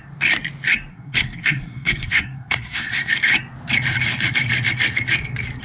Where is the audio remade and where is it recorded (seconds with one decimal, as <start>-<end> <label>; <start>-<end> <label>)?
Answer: 0.0-0.9 recorded; 0.9-3.1 remade; 3.1-5.6 recorded